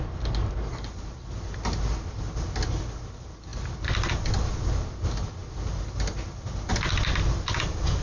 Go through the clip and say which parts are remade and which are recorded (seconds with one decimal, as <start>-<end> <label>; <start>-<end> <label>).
0.0-8.0 recorded